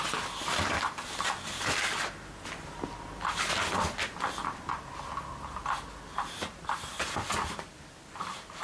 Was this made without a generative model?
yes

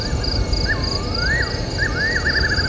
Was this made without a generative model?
yes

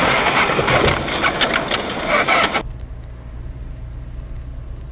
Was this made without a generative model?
yes